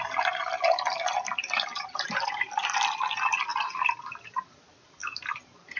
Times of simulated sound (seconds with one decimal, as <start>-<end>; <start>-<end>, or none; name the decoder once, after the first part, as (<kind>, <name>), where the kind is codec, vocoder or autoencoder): 1.7-2.6 (vocoder, BigVGAN v2); 3.5-4.6; 5.0-5.8